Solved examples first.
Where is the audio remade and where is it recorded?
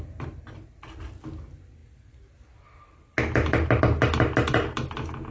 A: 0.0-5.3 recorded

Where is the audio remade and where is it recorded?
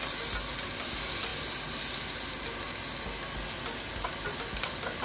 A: 0.0-5.0 recorded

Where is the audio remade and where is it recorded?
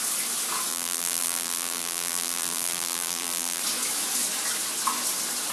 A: 0.0-0.7 recorded; 0.7-3.6 remade; 3.6-5.5 recorded